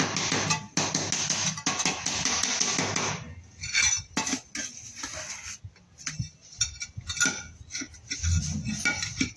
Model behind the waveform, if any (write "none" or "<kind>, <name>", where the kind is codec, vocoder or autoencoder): none